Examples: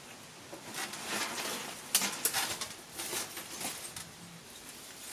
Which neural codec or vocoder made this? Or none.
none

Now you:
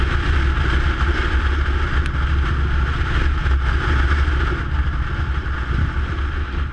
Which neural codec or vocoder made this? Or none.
none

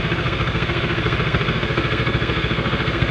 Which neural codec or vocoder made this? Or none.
codec, SNAC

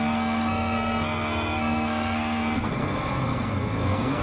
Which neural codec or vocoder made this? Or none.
codec, SNAC